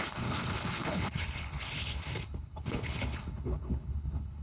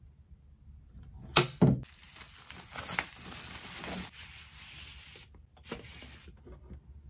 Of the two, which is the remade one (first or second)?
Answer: first